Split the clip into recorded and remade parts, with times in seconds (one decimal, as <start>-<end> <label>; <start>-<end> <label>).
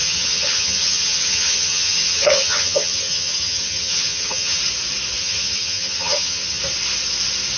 0.0-4.6 remade; 4.6-5.2 recorded; 5.2-6.6 remade; 6.6-7.6 recorded